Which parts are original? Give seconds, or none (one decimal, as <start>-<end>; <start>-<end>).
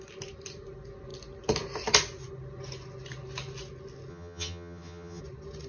0.0-4.1; 5.2-5.7